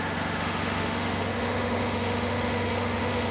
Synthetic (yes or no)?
yes